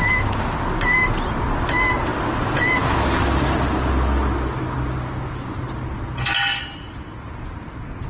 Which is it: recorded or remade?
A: recorded